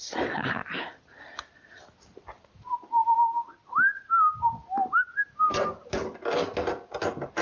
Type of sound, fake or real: real